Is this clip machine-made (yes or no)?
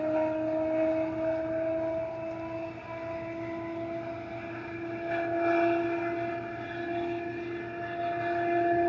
no